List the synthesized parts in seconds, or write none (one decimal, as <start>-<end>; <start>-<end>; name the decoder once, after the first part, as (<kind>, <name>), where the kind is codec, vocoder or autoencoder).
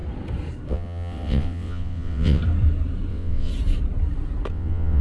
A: 0.7-2.4 (vocoder, WaveNeXt); 3.1-3.5; 4.5-5.0